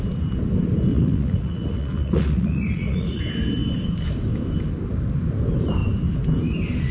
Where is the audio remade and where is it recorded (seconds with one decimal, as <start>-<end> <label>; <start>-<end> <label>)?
0.0-0.9 recorded; 0.9-3.2 remade; 3.2-6.9 recorded